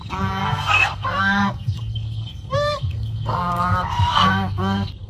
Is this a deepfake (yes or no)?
yes